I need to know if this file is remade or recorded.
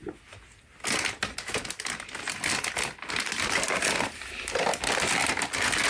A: recorded